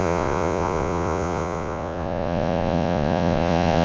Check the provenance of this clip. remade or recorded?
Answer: remade